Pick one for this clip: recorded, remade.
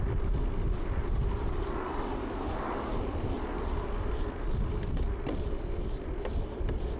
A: recorded